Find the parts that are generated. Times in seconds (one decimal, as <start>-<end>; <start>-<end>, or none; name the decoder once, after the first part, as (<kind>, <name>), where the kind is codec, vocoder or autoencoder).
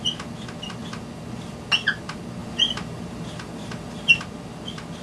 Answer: none